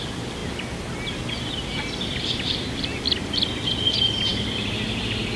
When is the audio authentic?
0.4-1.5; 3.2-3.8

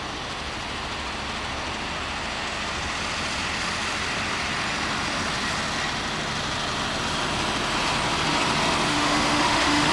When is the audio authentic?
0.0-8.9

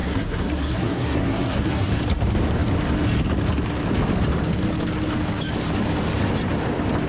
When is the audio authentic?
1.9-7.1